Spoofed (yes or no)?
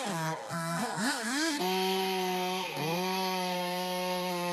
yes